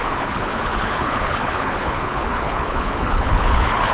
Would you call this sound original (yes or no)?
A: no